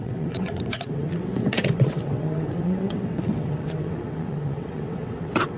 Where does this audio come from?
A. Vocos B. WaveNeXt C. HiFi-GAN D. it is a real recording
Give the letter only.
B